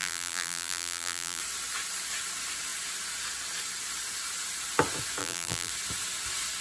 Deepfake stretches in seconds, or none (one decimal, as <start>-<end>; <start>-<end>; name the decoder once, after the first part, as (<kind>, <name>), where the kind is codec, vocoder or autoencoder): 0.0-1.4 (vocoder, BigVGAN v2); 5.2-5.7